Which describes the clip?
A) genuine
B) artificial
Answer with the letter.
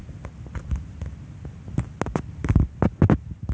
A